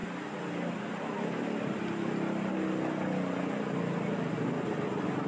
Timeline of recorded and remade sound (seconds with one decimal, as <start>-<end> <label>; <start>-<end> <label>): 0.0-5.3 recorded